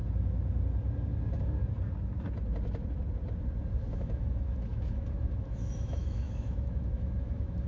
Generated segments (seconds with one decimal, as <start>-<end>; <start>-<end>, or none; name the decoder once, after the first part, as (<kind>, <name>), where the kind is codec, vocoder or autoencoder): 3.9-7.7 (autoencoder, DAC-VAE)